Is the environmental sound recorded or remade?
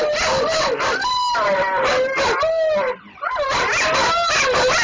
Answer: recorded